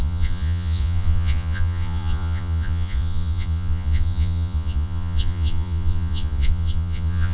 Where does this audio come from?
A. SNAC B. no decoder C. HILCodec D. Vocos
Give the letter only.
D